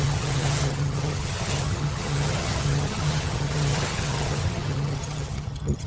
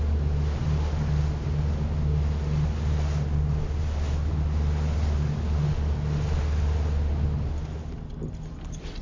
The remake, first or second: first